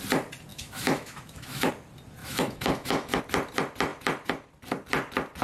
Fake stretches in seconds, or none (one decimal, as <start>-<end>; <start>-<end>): 0.5-1.7; 2.2-3.2